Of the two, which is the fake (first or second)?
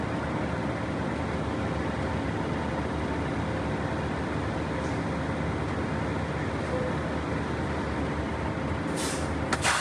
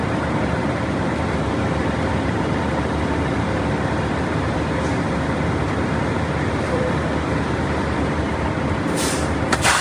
second